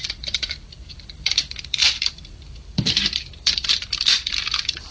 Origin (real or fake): fake